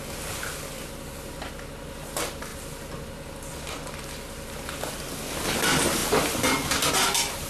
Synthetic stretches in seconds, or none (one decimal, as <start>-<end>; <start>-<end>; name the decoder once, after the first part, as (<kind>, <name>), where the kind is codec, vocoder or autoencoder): none